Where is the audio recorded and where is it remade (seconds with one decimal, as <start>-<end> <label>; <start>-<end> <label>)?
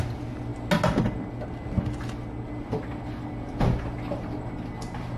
0.0-5.2 recorded